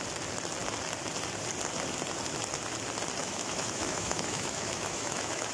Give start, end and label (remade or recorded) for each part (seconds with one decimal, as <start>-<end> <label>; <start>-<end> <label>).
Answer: 0.0-3.2 recorded; 3.2-5.5 remade